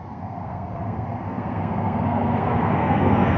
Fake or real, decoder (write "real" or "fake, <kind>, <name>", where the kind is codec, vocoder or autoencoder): fake, codec, SNAC